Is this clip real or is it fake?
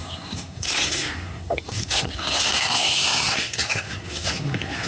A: fake